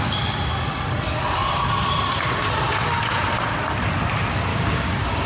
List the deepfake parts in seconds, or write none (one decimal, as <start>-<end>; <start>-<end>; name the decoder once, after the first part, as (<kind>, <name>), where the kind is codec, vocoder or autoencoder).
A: 4.5-5.3 (codec, DAC)